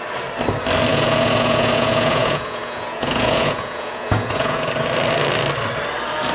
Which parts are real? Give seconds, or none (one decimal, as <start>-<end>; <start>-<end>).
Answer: 0.0-0.9; 4.7-6.3